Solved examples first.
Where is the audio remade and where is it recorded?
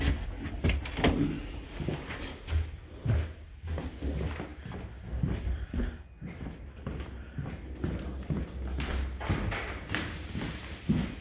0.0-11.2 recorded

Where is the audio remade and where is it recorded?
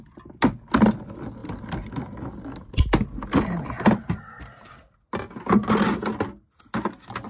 0.0-7.3 recorded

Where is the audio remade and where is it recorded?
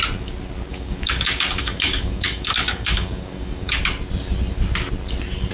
0.0-0.7 recorded; 0.7-3.8 remade; 3.8-5.5 recorded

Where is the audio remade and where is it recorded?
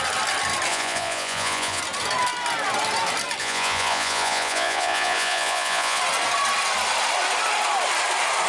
0.0-0.7 recorded; 0.7-1.8 remade; 1.8-3.4 recorded; 3.4-6.0 remade; 6.0-8.5 recorded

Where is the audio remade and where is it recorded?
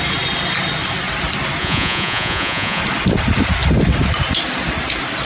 0.0-1.6 recorded; 1.6-2.8 remade; 2.8-5.2 recorded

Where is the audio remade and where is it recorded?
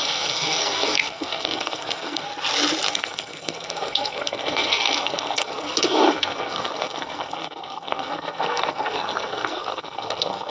0.0-2.3 remade; 2.3-2.9 recorded; 2.9-10.5 remade